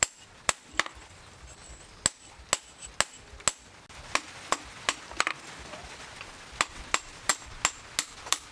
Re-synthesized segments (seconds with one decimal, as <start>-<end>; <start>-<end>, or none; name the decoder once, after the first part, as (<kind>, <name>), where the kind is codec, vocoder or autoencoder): 0.0-1.6 (vocoder, BigVGAN v2); 6.7-7.3; 8.0-8.5